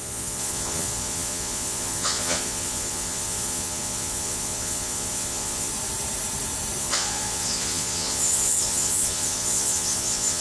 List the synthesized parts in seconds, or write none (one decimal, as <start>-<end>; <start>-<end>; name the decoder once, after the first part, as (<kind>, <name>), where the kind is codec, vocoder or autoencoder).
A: 0.0-5.7 (vocoder, Vocos); 6.8-10.4